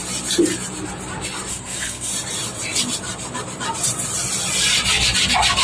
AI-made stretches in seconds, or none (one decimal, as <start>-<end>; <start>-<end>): 1.5-2.1